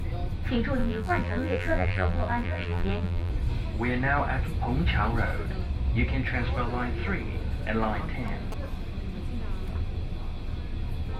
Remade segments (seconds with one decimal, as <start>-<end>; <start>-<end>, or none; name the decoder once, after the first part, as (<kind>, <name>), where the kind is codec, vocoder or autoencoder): 0.8-3.3 (vocoder, BigVGAN v2)